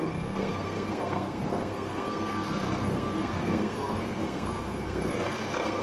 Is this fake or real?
fake